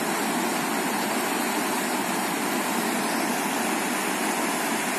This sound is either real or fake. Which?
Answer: real